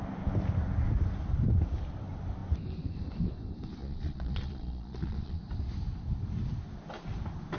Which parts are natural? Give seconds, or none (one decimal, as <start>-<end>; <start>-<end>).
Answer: 0.0-3.8; 5.4-7.6